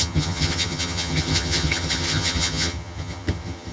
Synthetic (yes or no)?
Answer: yes